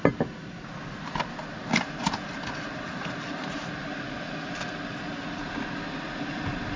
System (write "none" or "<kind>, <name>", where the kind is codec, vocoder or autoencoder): none